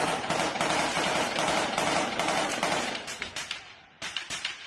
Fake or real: fake